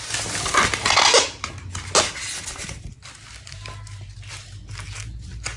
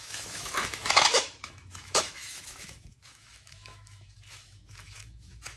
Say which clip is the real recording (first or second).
first